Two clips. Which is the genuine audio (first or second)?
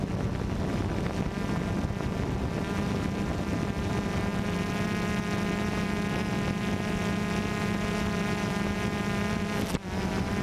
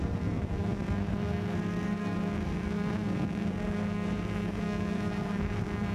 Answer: first